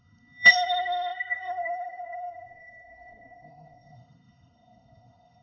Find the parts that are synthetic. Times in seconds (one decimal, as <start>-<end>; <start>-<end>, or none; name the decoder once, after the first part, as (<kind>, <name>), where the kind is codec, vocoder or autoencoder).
0.0-5.4 (codec, SNAC)